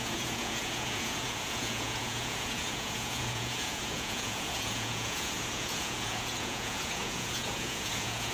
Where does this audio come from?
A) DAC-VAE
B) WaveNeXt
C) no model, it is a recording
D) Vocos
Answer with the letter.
D